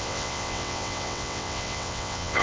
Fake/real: fake